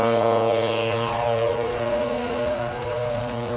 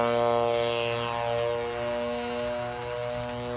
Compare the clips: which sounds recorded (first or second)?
second